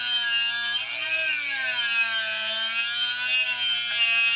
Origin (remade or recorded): recorded